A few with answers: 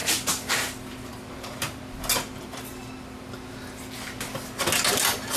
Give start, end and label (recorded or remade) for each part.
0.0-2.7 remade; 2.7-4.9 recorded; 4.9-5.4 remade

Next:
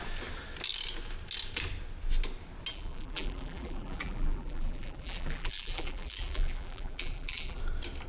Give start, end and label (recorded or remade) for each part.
0.0-2.7 recorded; 2.7-7.6 remade; 7.6-8.1 recorded